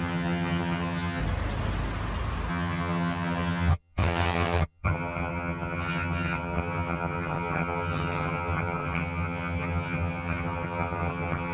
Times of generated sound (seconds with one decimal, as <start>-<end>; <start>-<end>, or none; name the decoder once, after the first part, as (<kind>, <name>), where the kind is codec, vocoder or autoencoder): 0.0-1.2 (vocoder, HiFi-GAN); 2.5-11.5